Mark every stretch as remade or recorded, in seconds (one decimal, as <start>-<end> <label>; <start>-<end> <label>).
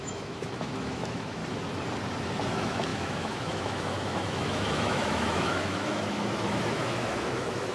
0.0-1.4 remade; 1.4-2.5 recorded; 2.5-7.7 remade